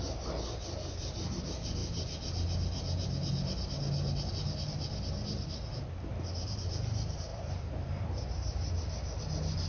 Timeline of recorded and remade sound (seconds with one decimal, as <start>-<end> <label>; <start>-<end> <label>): 0.0-7.3 recorded; 7.3-9.2 remade; 9.2-9.7 recorded